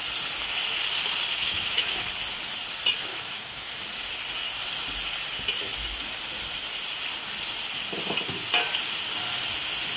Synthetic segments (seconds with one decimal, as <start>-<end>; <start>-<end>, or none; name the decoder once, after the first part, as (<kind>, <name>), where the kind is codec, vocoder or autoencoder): 1.3-2.0 (autoencoder, DAC-VAE); 3.1-3.7